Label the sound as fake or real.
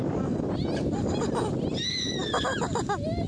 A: real